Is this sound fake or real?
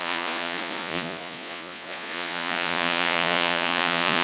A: fake